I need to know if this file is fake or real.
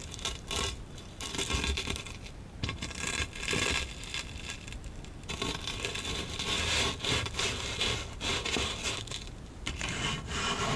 real